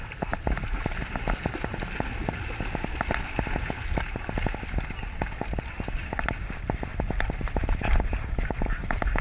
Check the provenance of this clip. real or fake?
real